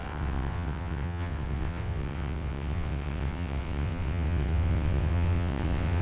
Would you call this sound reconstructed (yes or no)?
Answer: yes